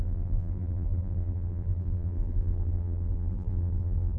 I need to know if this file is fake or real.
fake